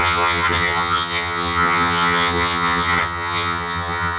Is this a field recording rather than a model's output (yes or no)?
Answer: no